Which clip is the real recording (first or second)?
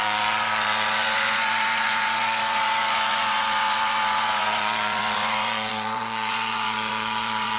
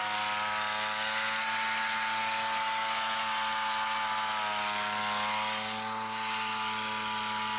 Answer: second